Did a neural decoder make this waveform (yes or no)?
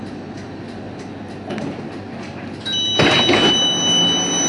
no